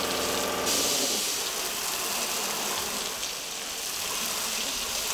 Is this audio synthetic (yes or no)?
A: no